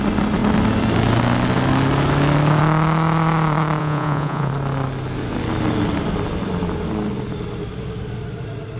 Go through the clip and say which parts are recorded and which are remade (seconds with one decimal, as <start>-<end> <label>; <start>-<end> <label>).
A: 0.0-3.8 recorded; 3.8-4.5 remade; 4.5-8.8 recorded